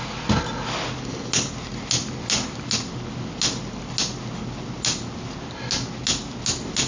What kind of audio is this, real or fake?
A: real